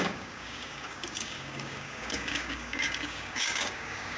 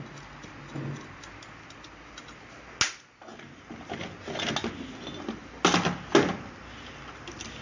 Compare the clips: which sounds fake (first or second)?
first